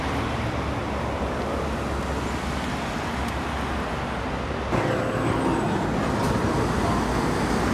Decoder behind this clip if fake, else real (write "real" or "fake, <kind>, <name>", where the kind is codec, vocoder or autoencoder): real